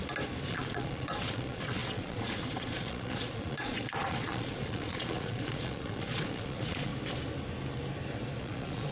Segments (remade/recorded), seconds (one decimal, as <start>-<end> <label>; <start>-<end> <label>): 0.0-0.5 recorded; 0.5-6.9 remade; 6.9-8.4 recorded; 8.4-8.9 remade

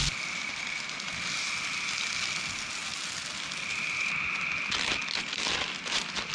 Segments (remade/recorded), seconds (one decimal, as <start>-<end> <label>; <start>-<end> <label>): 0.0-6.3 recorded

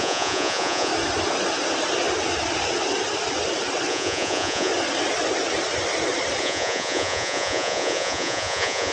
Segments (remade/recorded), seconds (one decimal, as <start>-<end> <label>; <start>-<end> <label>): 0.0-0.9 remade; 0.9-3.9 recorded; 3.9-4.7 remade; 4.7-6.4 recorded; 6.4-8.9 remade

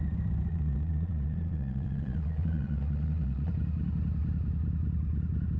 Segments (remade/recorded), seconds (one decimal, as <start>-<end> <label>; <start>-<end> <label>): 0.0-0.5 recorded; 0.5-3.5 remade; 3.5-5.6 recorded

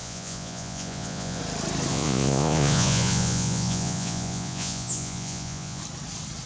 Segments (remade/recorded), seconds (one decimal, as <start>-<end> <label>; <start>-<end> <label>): 0.0-1.4 remade; 1.4-1.9 recorded; 1.9-5.8 remade; 5.8-6.5 recorded